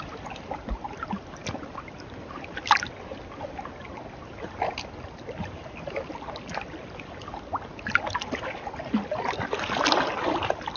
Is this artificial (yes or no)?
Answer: no